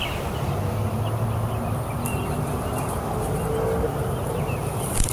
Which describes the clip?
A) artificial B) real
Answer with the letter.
B